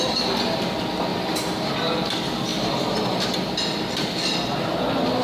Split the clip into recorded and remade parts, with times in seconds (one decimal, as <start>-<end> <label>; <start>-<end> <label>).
0.0-1.1 recorded; 1.1-1.7 remade; 1.7-5.2 recorded

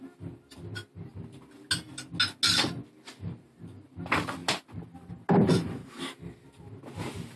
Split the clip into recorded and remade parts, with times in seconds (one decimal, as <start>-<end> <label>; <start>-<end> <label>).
0.0-7.4 recorded